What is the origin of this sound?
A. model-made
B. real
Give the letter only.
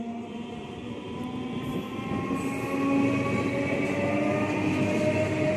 B